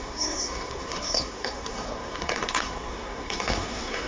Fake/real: fake